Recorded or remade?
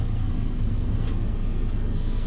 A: remade